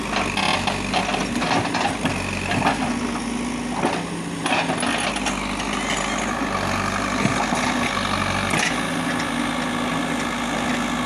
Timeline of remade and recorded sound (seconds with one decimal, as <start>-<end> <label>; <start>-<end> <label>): 0.0-11.1 recorded